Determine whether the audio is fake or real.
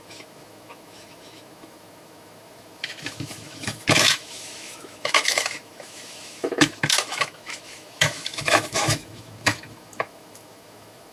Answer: fake